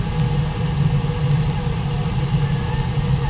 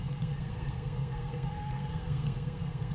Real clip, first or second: first